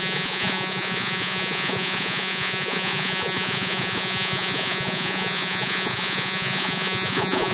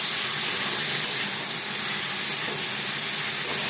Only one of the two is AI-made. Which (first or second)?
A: first